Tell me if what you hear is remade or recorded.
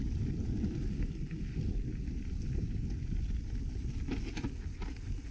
recorded